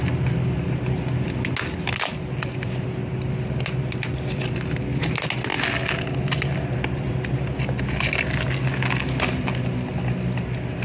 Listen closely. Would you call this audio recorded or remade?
recorded